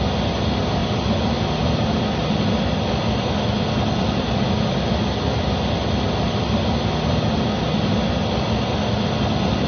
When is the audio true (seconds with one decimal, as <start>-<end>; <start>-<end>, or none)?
0.0-9.7